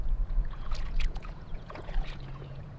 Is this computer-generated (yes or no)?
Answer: yes